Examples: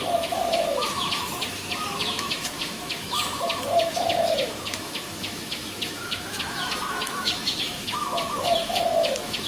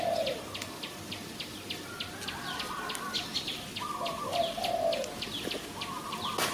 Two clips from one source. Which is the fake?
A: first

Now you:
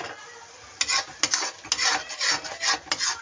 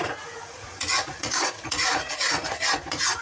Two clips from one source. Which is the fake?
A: second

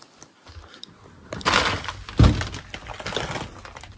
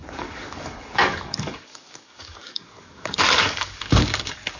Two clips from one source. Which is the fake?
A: second